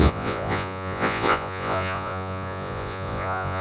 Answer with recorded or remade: remade